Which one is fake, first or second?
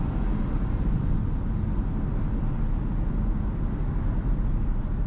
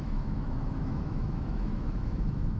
second